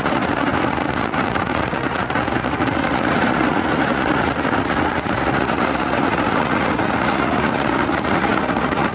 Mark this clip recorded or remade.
remade